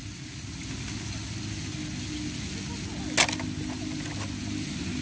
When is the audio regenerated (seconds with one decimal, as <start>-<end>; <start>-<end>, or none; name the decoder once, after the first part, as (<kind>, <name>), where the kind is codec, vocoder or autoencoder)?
none